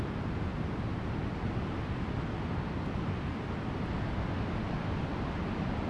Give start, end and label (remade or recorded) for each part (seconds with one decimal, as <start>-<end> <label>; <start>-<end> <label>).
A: 0.0-5.9 recorded